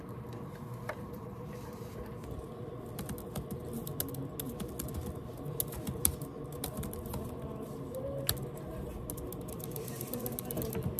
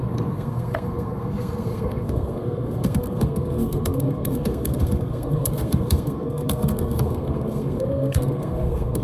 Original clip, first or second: first